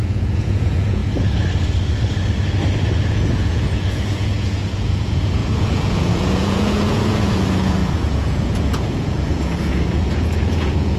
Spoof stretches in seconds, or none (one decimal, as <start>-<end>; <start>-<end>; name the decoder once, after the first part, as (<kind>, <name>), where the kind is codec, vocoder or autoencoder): 0.0-1.0 (vocoder, Vocos); 3.0-11.0